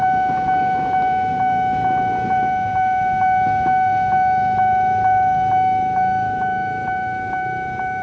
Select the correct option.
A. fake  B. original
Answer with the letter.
A